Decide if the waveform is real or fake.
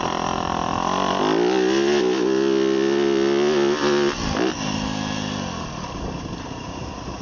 real